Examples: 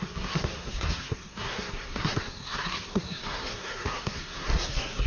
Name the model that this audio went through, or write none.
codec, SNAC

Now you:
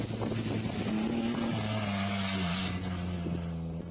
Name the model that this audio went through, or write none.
none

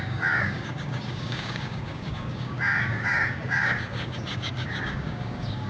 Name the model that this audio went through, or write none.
codec, DAC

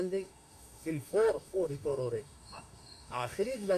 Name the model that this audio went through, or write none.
autoencoder, DAC-VAE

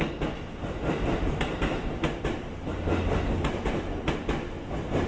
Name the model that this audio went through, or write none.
none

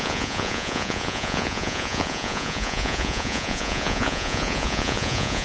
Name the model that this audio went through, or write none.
vocoder, Vocos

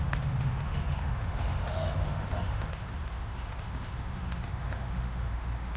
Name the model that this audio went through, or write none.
autoencoder, DAC-VAE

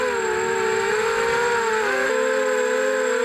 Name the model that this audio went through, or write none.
none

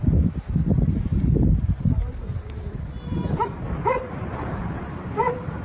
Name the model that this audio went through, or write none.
vocoder, BigVGAN v2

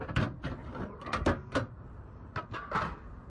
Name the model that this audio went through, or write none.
none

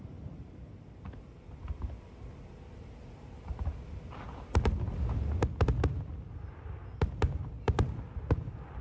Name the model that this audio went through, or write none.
none